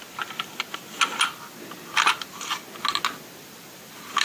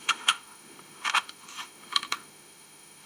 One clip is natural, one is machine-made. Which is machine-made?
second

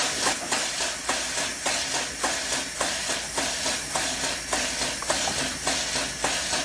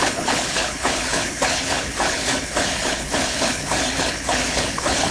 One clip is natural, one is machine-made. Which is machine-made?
second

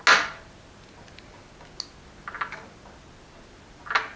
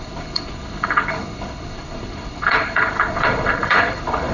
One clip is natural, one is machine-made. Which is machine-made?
second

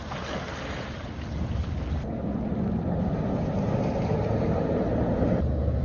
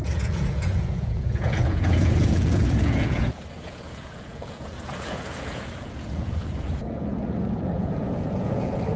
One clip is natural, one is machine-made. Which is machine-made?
second